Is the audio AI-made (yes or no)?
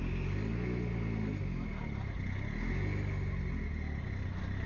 no